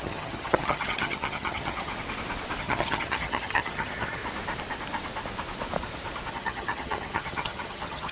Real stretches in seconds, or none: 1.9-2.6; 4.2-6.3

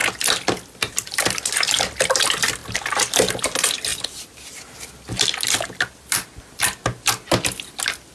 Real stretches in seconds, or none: 0.0-8.1

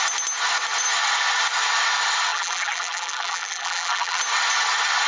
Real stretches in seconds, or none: 0.0-2.3; 4.2-5.1

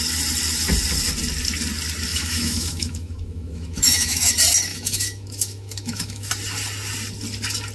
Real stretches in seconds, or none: 0.0-2.1; 4.3-4.7; 6.3-7.7

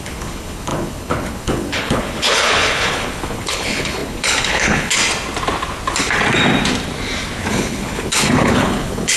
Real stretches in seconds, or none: 5.0-7.5